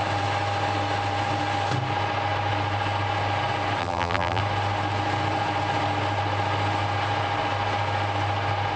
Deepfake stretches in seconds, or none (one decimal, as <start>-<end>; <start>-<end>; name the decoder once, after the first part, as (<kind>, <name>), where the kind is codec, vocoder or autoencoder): 3.8-4.4 (vocoder, BigVGAN v2)